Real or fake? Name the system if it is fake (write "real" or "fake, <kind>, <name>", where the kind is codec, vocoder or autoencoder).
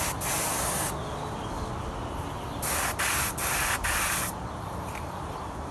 real